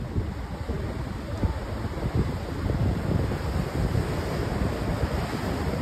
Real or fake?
real